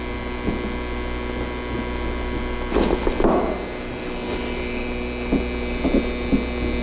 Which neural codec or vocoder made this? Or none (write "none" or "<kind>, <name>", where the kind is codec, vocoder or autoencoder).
none